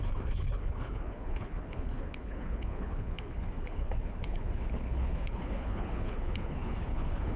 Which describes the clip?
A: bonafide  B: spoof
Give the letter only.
B